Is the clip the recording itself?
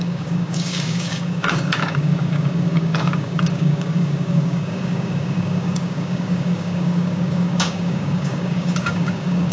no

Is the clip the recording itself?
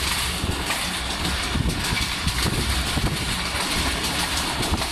yes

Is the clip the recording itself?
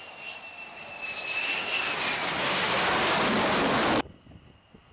yes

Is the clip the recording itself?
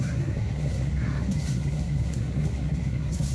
no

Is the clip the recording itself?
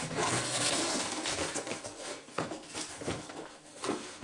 no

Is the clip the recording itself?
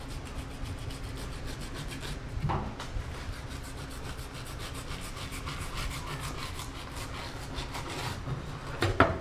yes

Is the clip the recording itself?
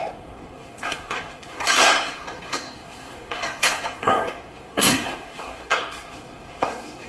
no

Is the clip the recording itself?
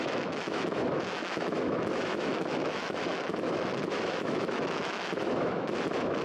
no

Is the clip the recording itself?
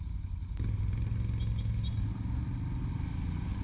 yes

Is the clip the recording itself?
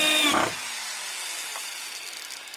yes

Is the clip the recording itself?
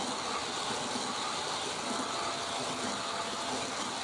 yes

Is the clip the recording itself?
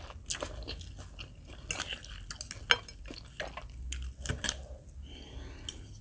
yes